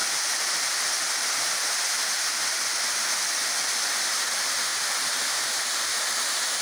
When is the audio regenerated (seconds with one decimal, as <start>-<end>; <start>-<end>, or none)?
none